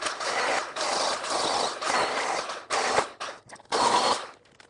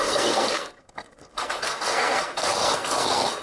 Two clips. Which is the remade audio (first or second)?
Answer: second